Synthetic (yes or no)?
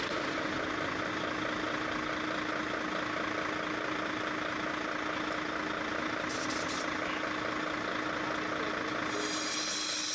no